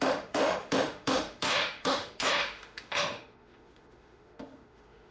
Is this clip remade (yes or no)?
yes